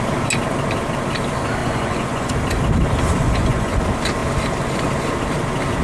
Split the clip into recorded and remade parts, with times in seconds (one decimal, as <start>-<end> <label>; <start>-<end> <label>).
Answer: 0.0-1.6 recorded; 1.6-2.3 remade; 2.3-3.2 recorded; 3.2-3.8 remade; 3.8-5.8 recorded